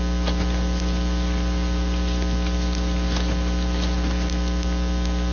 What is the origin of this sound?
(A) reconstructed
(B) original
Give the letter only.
B